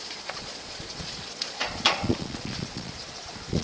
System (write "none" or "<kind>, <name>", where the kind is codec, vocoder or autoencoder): vocoder, Vocos